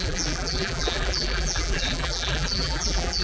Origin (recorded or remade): remade